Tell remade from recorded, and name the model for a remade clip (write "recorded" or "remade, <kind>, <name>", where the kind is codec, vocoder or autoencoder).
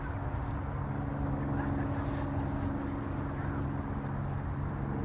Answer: recorded